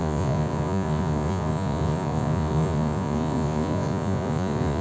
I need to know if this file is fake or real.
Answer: fake